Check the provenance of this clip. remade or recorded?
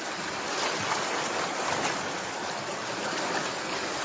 recorded